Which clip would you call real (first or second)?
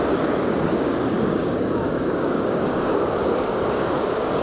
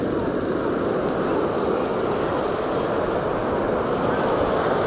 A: second